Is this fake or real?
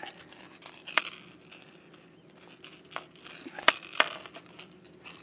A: real